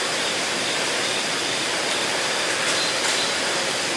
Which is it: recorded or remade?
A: remade